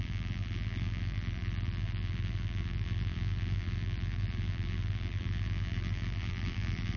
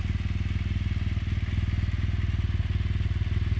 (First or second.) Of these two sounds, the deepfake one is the first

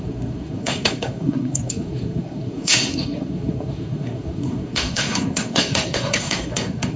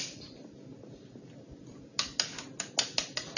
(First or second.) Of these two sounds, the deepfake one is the first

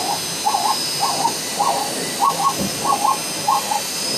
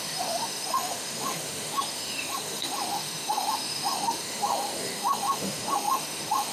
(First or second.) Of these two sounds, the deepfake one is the second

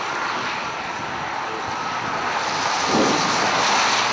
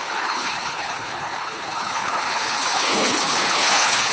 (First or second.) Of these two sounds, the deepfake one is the second